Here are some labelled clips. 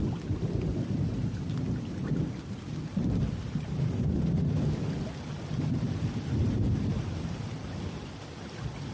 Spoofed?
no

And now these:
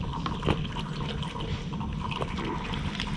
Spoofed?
no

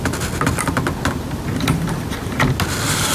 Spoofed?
no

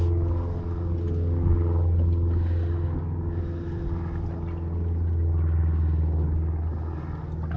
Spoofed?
no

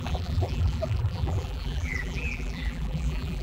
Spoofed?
yes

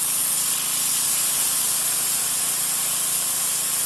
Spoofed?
no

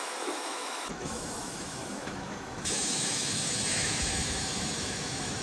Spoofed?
yes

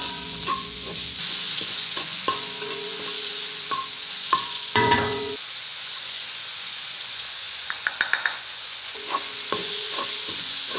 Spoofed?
yes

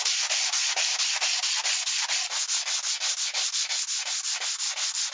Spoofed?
no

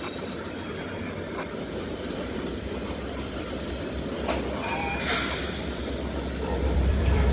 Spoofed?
yes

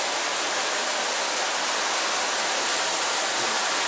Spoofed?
no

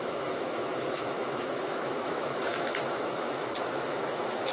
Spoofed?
yes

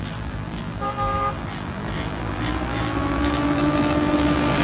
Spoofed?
yes